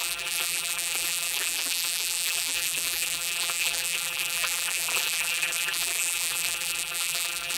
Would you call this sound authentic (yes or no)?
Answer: no